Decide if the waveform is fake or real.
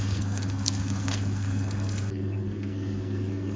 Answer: fake